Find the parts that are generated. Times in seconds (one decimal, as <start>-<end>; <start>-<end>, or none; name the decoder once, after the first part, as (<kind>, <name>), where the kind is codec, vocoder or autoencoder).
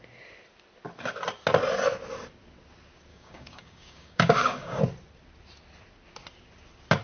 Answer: 3.1-4.8 (codec, DAC)